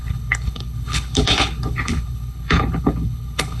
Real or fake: fake